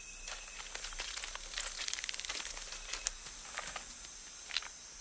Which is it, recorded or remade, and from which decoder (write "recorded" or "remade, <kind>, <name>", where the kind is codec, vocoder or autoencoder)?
recorded